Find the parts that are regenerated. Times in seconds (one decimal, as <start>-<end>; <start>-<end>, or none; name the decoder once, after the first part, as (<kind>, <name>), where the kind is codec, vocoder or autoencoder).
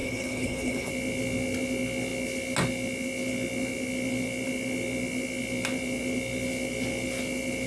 0.0-0.9 (codec, HILCodec)